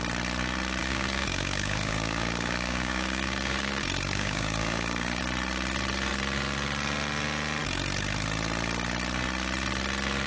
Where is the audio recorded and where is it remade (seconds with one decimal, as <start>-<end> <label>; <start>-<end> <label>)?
0.0-0.8 recorded; 0.8-5.2 remade; 5.2-10.3 recorded